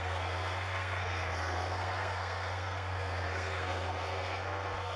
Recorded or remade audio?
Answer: remade